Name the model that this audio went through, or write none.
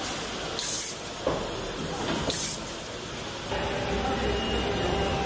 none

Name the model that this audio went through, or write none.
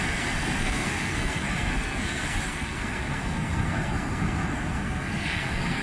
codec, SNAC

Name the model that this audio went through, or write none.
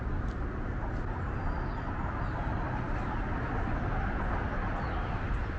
none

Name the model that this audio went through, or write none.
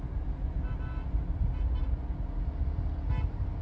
none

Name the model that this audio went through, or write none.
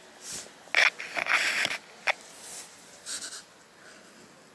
none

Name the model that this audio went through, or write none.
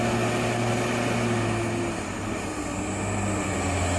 none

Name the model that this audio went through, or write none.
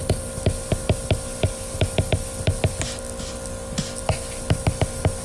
none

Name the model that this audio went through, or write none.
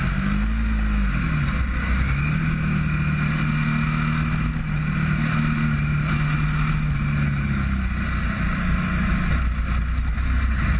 none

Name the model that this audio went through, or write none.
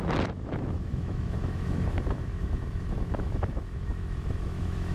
autoencoder, DAC-VAE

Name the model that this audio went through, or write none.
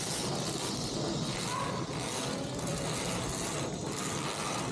none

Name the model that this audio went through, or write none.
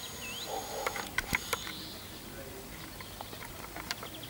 none